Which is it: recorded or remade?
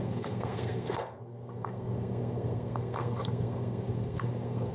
remade